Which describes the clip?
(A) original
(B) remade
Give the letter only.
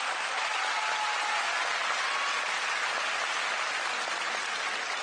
A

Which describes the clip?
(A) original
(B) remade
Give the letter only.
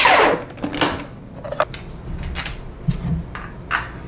A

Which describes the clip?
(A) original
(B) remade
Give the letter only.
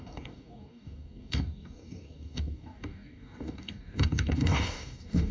B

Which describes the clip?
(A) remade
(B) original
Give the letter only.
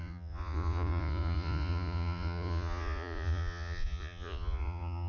A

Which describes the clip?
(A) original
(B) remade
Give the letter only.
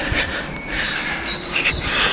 B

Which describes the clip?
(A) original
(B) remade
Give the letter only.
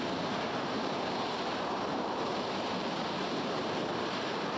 B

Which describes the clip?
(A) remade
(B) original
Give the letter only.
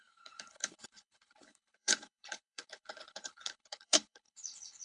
A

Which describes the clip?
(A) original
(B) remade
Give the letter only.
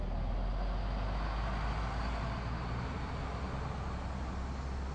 A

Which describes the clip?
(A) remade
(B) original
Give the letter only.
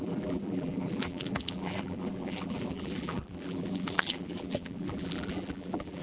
A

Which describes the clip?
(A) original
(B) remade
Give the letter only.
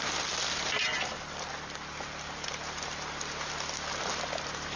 A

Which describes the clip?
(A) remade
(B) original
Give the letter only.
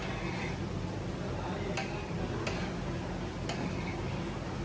B